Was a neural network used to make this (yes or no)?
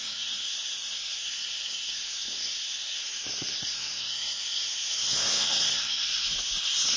yes